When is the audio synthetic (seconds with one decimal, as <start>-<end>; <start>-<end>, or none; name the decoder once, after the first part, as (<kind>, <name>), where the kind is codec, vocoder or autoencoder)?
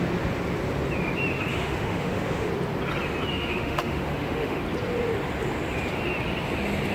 1.5-2.5 (autoencoder, DAC-VAE); 3.3-4.6